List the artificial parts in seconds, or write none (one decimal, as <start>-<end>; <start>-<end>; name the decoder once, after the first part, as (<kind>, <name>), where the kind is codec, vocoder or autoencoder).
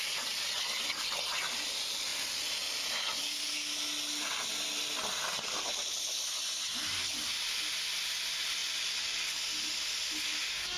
none